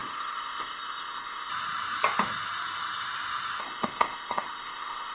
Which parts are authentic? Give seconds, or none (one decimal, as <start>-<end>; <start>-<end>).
1.5-3.6